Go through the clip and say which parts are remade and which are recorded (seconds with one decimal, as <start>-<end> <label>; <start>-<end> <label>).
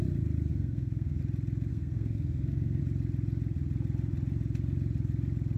0.0-0.5 recorded; 0.5-1.2 remade; 1.2-1.7 recorded; 1.7-2.8 remade; 2.8-5.6 recorded